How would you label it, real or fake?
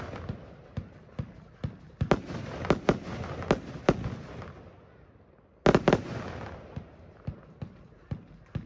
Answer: real